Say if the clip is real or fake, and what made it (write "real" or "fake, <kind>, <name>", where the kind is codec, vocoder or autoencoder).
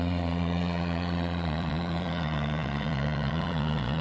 fake, vocoder, Vocos